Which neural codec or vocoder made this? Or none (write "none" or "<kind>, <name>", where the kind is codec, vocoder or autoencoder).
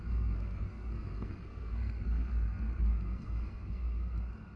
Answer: codec, SNAC